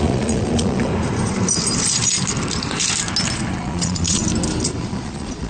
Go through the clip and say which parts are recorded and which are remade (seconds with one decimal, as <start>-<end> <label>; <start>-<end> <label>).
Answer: 0.0-0.9 remade; 0.9-3.5 recorded; 3.5-4.2 remade; 4.2-4.8 recorded; 4.8-5.5 remade